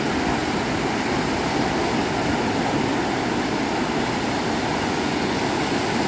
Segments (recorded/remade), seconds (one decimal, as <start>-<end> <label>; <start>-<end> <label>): 0.0-4.7 recorded; 4.7-5.4 remade; 5.4-6.1 recorded